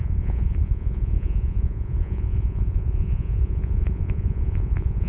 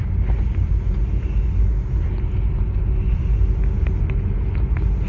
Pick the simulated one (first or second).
first